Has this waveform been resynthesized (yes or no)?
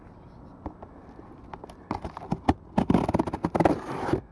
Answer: no